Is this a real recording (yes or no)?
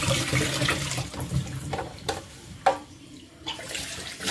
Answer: no